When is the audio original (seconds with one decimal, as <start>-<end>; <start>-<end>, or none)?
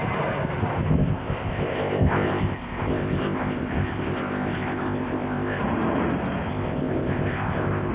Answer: 0.0-0.9; 5.6-6.5